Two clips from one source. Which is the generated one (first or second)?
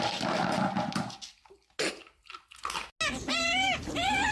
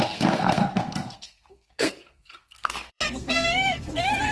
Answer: second